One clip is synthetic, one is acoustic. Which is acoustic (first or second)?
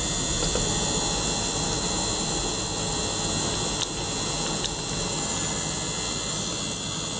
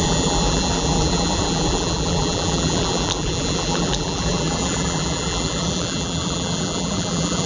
first